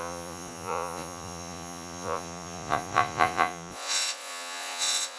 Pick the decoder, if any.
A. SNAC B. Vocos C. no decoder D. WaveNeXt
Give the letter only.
B